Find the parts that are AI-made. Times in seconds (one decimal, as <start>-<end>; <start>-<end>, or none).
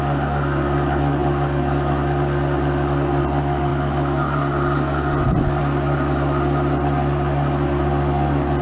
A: none